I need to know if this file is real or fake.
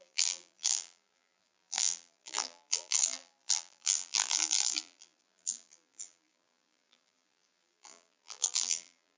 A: fake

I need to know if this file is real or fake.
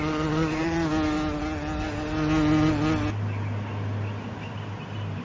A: real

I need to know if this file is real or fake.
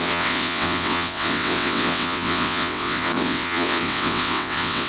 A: fake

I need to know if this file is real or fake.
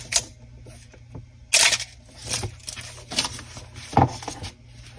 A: real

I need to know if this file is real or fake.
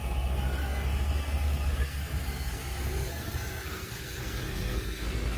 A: fake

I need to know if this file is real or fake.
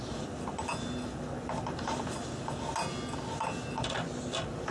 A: real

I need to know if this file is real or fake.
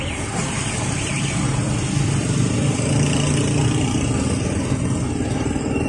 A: real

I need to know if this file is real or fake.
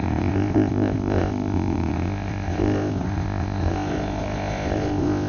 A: fake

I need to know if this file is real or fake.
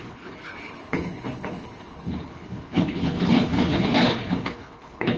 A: fake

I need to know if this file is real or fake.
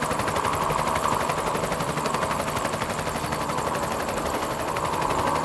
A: real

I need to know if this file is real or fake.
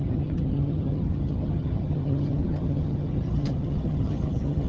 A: fake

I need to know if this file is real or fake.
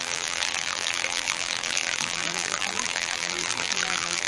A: fake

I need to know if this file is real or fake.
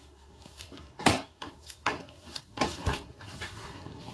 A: fake